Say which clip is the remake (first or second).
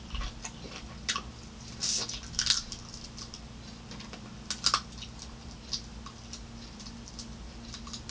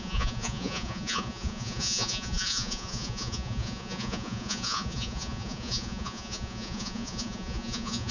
second